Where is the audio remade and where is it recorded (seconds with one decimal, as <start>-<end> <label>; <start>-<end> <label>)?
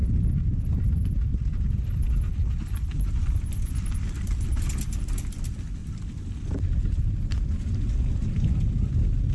0.0-1.3 recorded; 1.3-3.9 remade; 3.9-5.8 recorded; 5.8-7.1 remade; 7.1-9.3 recorded